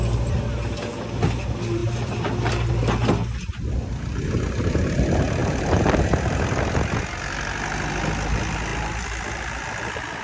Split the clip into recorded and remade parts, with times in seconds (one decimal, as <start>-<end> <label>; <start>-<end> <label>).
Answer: 0.0-1.8 recorded; 1.8-2.7 remade; 2.7-5.4 recorded; 5.4-7.0 remade; 7.0-8.7 recorded; 8.7-10.2 remade